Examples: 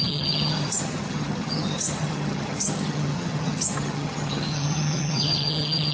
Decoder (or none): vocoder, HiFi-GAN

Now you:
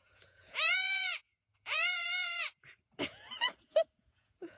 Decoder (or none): vocoder, Vocos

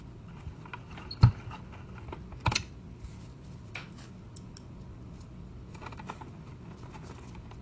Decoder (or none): none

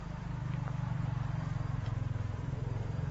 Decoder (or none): vocoder, BigVGAN v2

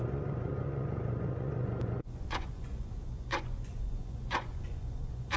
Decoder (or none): vocoder, Vocos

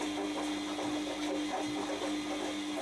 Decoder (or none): none